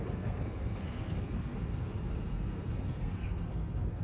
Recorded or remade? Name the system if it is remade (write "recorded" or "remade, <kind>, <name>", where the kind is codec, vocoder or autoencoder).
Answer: remade, codec, SNAC